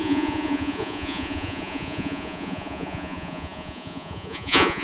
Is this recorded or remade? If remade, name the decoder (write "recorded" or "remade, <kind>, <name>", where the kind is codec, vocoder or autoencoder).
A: remade, vocoder, Vocos